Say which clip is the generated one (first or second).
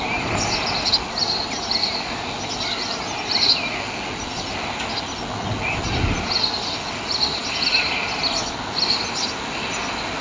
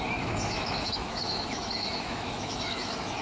second